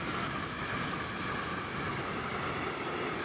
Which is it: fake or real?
real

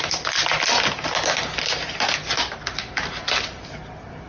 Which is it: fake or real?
real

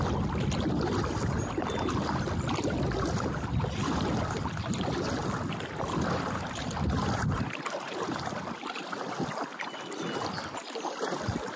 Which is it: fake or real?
real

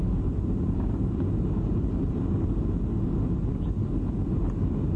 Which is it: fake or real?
real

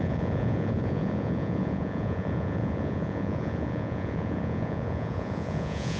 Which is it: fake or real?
fake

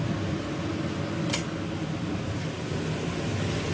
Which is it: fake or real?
real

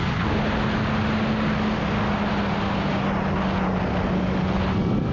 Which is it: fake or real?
real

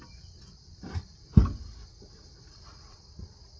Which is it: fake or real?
real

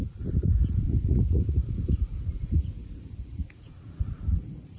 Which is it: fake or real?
fake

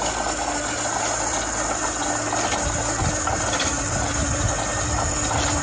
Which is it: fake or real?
real